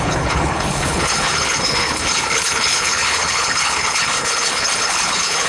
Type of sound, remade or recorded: remade